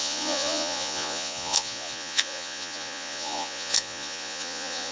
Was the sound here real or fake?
fake